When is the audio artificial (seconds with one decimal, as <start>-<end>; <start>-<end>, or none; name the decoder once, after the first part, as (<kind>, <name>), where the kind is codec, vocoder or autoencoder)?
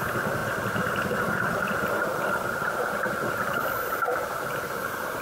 0.0-0.4 (vocoder, BigVGAN v2); 1.5-5.2